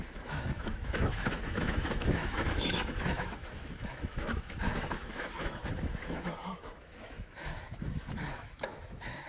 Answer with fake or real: fake